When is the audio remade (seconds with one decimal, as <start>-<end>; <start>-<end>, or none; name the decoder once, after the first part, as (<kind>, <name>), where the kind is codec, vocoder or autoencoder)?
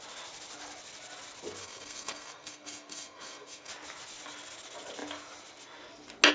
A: 1.6-3.7 (codec, SNAC)